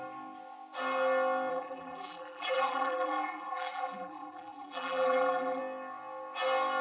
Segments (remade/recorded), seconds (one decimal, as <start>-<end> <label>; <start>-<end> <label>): 0.0-1.5 recorded; 1.5-5.6 remade; 5.6-6.8 recorded